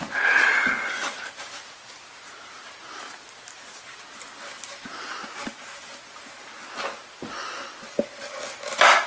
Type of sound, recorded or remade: recorded